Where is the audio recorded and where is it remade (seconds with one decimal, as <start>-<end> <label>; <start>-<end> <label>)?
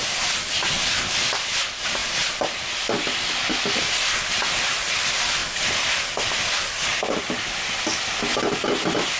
0.0-9.2 recorded